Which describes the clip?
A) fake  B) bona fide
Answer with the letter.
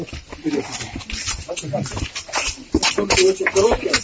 B